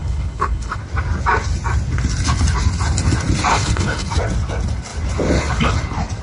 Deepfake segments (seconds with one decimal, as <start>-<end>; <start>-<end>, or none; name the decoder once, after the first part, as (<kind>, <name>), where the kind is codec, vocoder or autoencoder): 0.0-0.8 (codec, HILCodec); 3.5-4.1